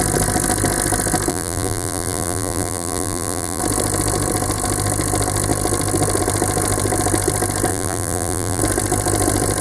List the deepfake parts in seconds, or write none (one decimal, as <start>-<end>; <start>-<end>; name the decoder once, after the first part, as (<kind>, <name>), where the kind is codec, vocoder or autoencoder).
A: 1.3-3.6 (vocoder, BigVGAN v2); 7.7-8.6